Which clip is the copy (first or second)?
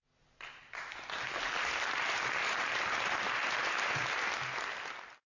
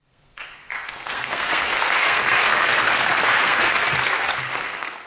second